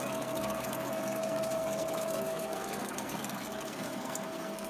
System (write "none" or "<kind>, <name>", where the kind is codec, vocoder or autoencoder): codec, SNAC